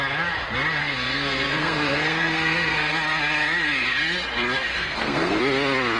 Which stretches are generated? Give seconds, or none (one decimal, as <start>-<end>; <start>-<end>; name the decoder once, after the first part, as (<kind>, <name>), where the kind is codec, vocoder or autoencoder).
0.8-2.9 (codec, SNAC); 4.7-5.4